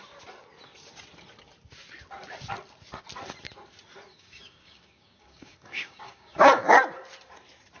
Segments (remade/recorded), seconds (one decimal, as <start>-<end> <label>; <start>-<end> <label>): 0.0-4.1 recorded; 4.1-6.6 remade; 6.6-7.8 recorded